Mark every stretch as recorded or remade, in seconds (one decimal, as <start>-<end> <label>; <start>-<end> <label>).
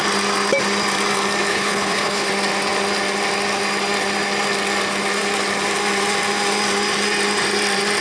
0.0-1.5 recorded; 1.5-2.3 remade; 2.3-8.0 recorded